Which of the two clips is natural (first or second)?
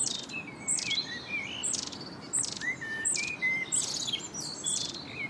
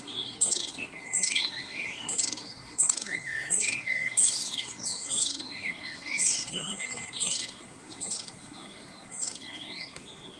first